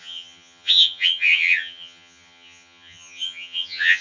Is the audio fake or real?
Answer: fake